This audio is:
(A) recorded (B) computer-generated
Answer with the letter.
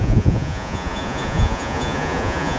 B